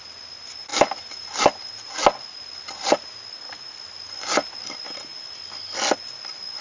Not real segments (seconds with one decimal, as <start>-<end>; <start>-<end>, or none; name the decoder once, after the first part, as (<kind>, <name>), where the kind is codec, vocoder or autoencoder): none